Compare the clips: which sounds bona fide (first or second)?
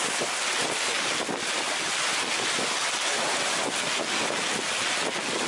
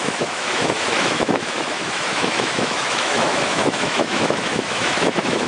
first